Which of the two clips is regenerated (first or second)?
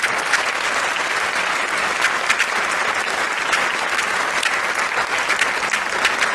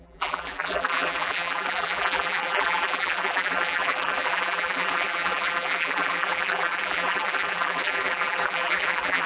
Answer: second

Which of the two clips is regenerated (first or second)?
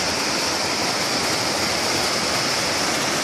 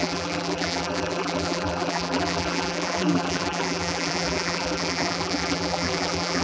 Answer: second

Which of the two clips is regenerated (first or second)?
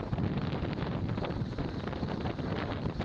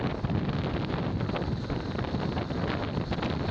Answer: first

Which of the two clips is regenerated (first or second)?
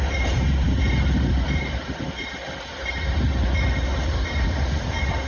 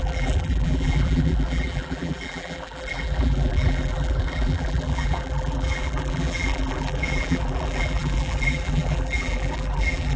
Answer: second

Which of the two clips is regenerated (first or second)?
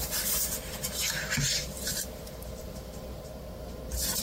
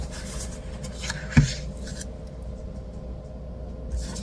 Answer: first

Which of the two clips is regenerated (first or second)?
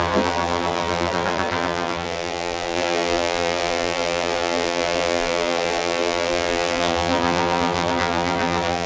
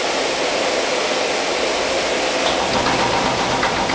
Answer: first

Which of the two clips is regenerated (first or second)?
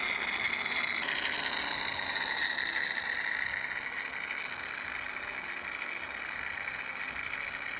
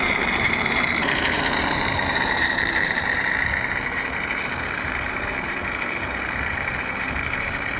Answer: second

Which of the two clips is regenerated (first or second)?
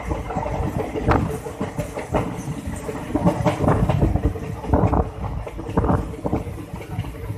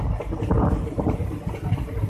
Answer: second